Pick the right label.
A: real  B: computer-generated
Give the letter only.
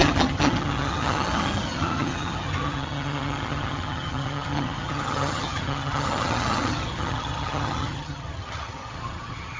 B